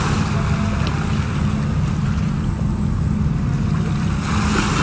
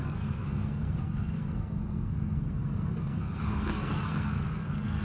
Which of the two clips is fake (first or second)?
second